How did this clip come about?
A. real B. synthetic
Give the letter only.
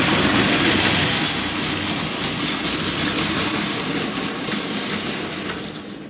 A